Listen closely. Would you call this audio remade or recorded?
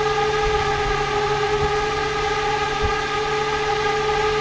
recorded